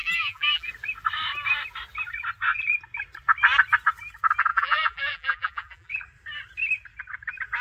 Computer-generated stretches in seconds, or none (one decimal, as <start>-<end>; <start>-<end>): 0.0-0.7; 4.5-5.9